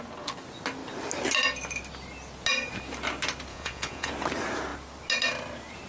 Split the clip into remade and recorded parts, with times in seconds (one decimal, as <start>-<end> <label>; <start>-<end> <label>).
0.0-3.5 recorded; 3.5-4.1 remade; 4.1-5.9 recorded